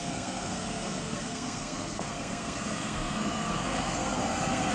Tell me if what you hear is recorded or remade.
remade